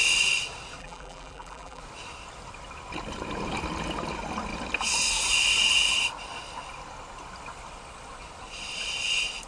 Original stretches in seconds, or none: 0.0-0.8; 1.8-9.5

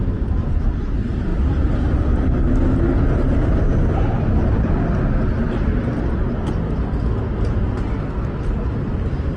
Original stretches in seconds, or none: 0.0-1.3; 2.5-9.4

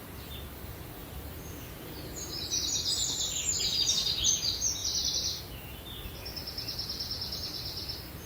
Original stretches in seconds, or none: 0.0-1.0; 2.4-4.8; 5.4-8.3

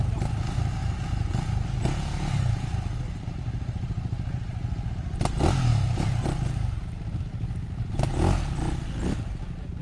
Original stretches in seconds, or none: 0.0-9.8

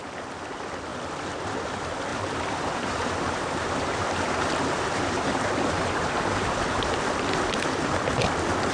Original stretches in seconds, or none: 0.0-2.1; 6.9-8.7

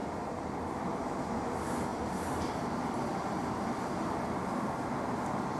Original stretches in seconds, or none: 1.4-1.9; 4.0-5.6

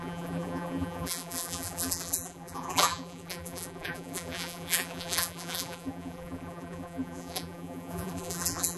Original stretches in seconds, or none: none